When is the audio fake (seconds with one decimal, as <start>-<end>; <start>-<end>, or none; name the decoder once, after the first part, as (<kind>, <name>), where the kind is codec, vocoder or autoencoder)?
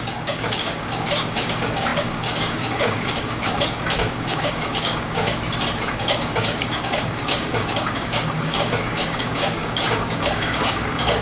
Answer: 0.0-5.3 (codec, DAC); 5.9-11.2